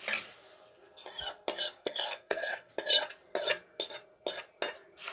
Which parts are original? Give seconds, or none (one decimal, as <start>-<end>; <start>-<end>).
0.0-1.8; 2.7-5.1